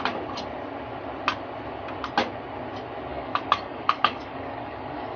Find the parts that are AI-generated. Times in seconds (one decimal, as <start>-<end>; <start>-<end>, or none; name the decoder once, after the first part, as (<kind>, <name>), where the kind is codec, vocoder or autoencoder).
3.1-5.2 (codec, DAC)